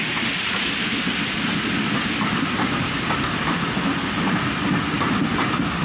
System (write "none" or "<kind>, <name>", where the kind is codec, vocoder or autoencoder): none